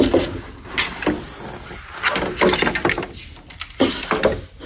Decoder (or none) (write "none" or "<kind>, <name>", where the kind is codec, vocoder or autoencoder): none